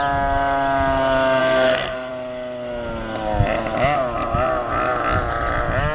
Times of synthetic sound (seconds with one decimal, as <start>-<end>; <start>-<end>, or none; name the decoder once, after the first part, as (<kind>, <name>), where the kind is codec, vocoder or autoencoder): 1.4-2.1 (codec, SNAC)